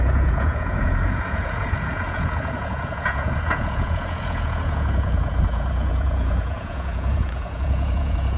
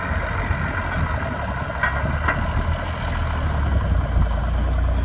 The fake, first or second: first